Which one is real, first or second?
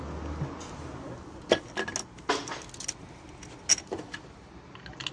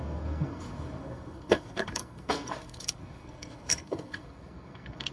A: first